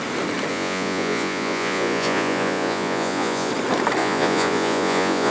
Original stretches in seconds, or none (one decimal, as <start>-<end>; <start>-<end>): 0.0-0.5; 3.5-4.0